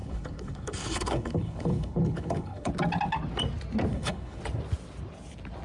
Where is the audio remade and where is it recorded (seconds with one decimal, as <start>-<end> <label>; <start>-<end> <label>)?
0.0-2.7 remade; 2.7-3.9 recorded; 3.9-4.4 remade; 4.4-5.6 recorded